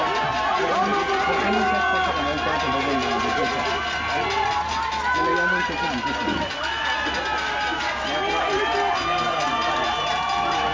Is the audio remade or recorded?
recorded